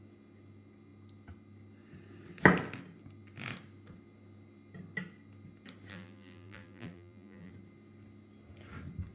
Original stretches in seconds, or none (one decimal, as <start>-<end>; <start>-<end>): 0.0-5.9; 7.5-9.1